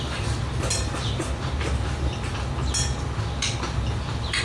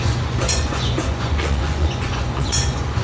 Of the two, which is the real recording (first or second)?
first